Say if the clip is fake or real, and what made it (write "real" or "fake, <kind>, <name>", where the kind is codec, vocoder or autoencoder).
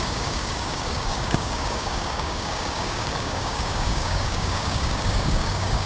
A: fake, codec, DAC